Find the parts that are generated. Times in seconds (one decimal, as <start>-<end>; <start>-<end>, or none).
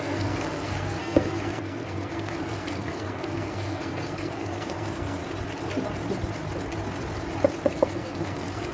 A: 0.0-5.2; 7.7-8.7